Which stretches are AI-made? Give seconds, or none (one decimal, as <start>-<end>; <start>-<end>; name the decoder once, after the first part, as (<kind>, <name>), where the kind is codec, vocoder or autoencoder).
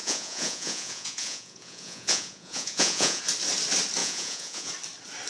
0.0-3.2 (vocoder, Vocos); 4.0-4.7